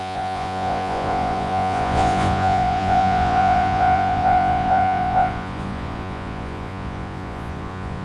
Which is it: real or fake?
fake